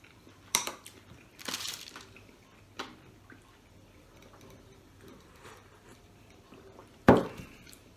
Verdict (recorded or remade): remade